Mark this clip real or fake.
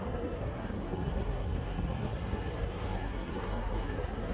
fake